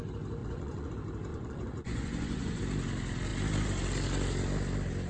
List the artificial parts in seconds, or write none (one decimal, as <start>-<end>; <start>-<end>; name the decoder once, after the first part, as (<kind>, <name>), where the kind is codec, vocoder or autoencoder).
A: 0.4-0.9 (vocoder, Vocos); 1.3-2.6